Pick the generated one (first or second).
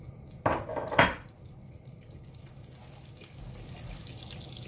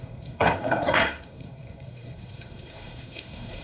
second